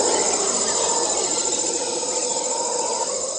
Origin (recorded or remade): remade